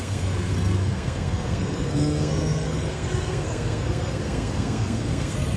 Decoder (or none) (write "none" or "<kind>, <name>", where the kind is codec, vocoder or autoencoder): codec, SNAC